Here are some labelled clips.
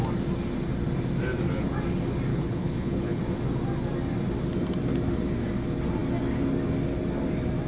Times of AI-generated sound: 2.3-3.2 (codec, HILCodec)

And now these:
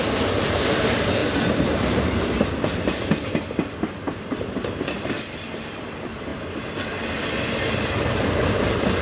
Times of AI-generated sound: 1.2-2.2 (vocoder, BigVGAN v2)

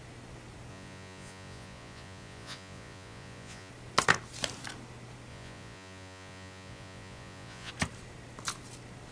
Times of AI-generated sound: 0.7-3.7 (vocoder, Vocos); 5.3-7.7

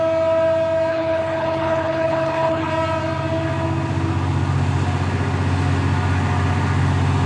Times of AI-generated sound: 0.9-2.7 (codec, HILCodec)

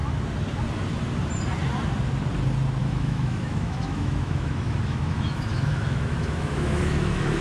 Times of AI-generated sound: 2.8-7.4 (autoencoder, DAC-VAE)

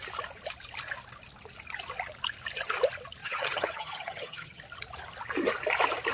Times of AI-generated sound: 3.2-4.6 (vocoder, HiFi-GAN)